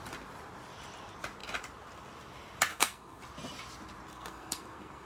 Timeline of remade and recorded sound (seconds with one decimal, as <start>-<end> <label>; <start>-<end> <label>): 0.0-2.7 recorded; 2.7-3.2 remade; 3.2-4.1 recorded; 4.1-5.1 remade